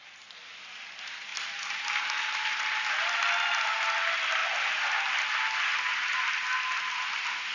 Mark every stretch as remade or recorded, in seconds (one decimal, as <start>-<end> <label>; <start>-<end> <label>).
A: 0.0-4.4 recorded; 4.4-5.4 remade; 5.4-7.5 recorded